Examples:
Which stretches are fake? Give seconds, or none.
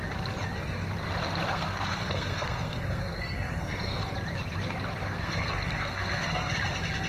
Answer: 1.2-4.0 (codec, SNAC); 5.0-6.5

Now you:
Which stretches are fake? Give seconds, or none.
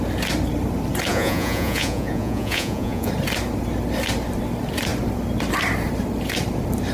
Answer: 1.1-3.1 (vocoder, Vocos)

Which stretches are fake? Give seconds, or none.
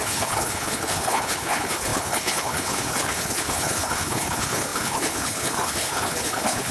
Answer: 0.0-6.7 (codec, HILCodec)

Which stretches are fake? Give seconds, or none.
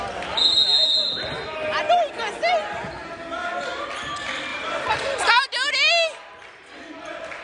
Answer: 4.5-5.2 (vocoder, BigVGAN v2)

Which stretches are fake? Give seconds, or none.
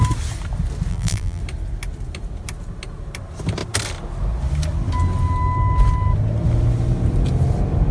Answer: 0.9-1.4 (vocoder, BigVGAN v2)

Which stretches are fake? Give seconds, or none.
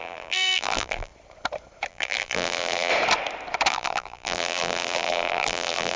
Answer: 0.0-1.1 (vocoder, BigVGAN v2); 1.9-2.9; 3.7-6.0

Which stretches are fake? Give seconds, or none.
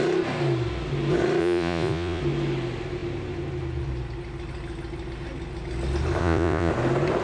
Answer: 1.4-2.2 (vocoder, Vocos); 6.2-6.7